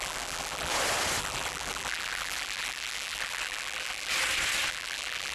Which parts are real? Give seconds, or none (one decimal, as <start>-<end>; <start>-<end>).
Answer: 0.7-1.2; 4.1-4.7